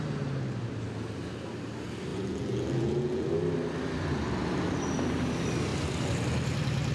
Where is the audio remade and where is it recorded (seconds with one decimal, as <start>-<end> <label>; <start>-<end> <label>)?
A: 0.0-2.1 recorded; 2.1-3.3 remade; 3.3-6.9 recorded